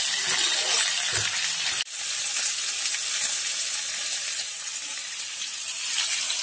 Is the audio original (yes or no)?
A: yes